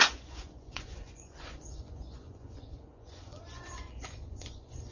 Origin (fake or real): fake